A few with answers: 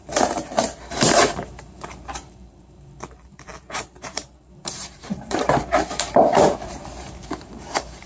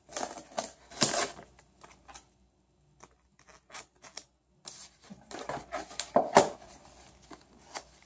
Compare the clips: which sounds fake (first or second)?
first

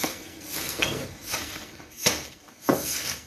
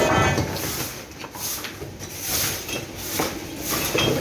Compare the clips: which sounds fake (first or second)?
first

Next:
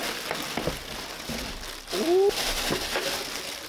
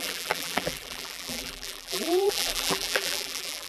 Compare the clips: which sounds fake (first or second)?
second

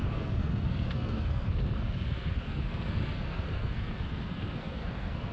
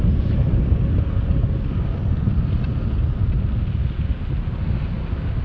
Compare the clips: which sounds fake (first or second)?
first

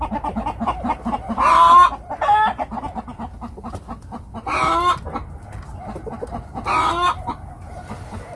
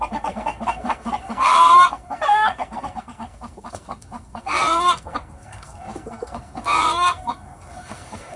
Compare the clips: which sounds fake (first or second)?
second